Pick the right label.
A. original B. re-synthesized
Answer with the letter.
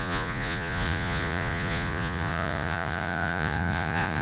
B